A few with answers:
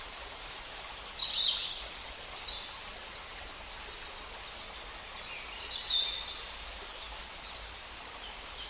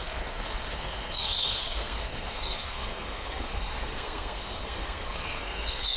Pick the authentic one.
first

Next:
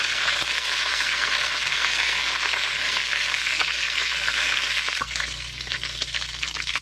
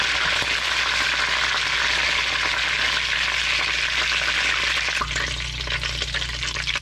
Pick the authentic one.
second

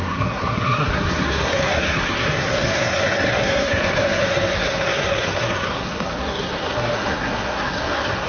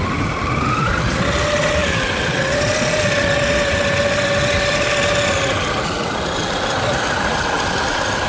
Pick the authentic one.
second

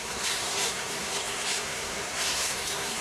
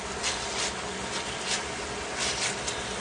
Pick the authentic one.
second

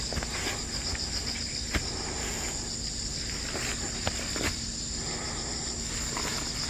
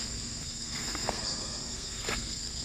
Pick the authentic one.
first